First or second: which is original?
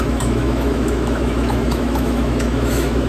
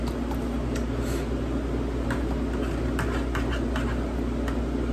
second